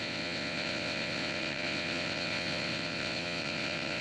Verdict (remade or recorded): remade